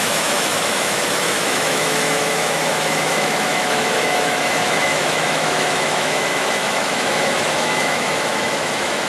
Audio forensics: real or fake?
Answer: fake